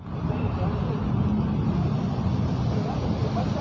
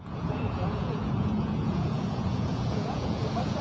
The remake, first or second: second